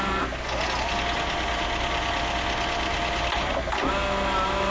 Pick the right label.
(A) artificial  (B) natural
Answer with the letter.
B